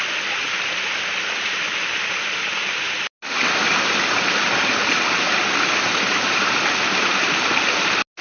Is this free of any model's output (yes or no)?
yes